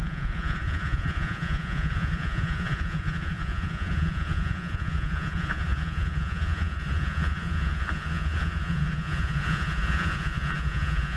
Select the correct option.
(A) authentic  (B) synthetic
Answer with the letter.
B